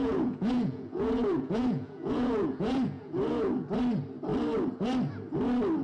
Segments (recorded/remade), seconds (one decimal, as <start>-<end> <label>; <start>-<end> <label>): 0.0-3.5 remade; 3.5-5.8 recorded

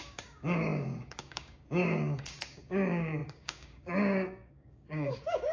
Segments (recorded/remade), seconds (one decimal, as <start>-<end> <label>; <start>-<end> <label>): 0.0-5.5 remade

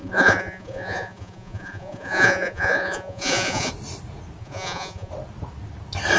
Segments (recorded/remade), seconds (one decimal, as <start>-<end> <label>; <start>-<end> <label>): 0.0-3.7 remade; 3.7-4.4 recorded; 4.4-5.1 remade; 5.1-6.2 recorded

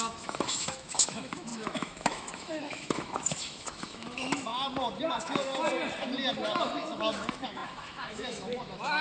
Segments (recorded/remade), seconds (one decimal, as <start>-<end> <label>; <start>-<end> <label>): 0.0-4.5 remade; 4.5-5.1 recorded; 5.1-5.5 remade; 5.5-6.5 recorded; 6.5-9.0 remade

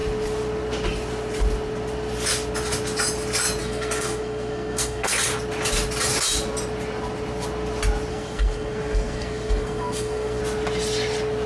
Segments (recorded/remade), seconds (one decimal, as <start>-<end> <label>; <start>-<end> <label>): 0.0-3.6 recorded; 3.6-5.1 remade; 5.1-8.1 recorded; 8.1-10.4 remade; 10.4-11.5 recorded